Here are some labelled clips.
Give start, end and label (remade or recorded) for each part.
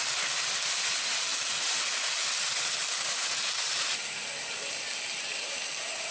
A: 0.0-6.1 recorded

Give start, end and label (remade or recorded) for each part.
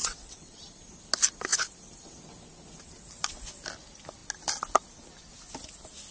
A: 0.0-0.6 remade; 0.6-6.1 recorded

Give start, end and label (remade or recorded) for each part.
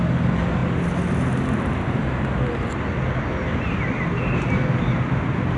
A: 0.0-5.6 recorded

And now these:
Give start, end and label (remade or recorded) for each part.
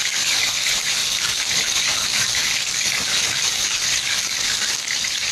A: 0.0-5.3 remade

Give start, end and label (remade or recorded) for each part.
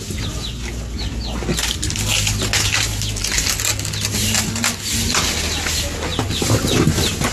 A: 0.0-7.3 recorded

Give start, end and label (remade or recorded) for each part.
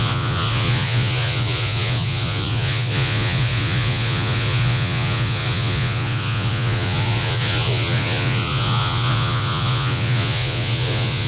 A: 0.0-11.3 remade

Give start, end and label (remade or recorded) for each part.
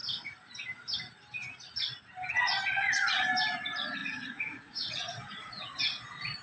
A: 0.0-4.0 recorded; 4.0-5.6 remade; 5.6-6.4 recorded